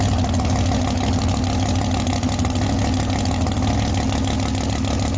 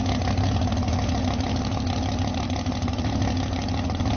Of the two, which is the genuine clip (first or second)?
first